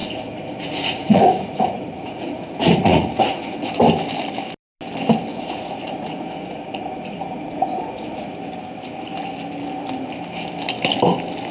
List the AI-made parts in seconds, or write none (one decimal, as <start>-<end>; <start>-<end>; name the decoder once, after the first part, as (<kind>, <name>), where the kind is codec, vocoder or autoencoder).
0.0-3.7 (vocoder, Vocos); 5.3-8.3